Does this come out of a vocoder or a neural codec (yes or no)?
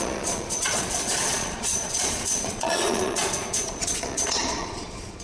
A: yes